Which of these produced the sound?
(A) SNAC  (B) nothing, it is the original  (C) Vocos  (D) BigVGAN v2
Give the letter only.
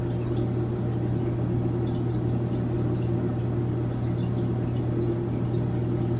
B